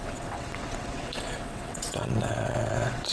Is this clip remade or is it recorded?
remade